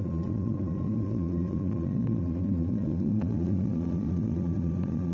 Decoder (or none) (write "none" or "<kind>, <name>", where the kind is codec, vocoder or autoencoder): vocoder, Vocos